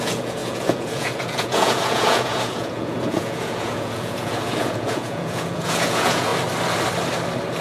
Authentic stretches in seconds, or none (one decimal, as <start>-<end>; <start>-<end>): 6.3-7.6